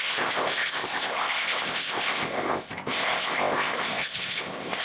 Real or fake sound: fake